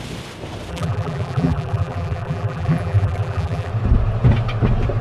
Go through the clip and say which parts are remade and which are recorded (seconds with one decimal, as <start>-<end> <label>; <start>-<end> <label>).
0.0-0.7 recorded; 0.7-3.7 remade; 3.7-5.0 recorded